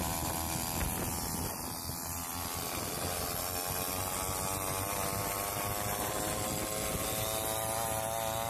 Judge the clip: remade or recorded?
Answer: recorded